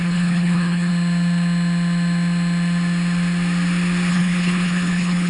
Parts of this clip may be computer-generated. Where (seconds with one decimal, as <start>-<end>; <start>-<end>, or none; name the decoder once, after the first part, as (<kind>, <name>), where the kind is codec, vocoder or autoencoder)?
0.0-0.9 (codec, HILCodec); 4.1-5.3